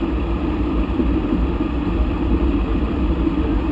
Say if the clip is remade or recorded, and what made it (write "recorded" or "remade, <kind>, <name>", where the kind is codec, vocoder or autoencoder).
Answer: recorded